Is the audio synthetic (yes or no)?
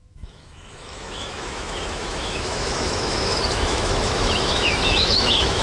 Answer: yes